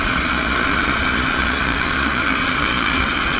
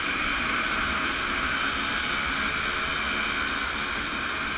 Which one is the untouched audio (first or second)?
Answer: second